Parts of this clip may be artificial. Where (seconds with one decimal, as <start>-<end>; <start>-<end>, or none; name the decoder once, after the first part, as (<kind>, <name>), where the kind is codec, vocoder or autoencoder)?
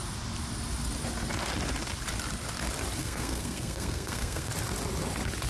3.0-4.5 (codec, SNAC)